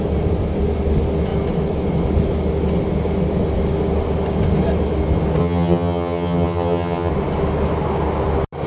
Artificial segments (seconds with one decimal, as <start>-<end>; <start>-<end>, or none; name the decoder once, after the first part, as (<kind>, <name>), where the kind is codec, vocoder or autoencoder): 5.4-7.1 (vocoder, HiFi-GAN)